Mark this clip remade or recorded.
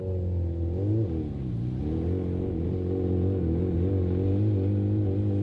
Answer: recorded